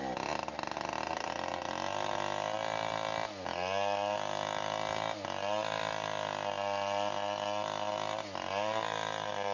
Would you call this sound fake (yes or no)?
no